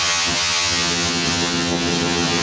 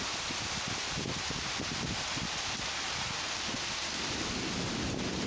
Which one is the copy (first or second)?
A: first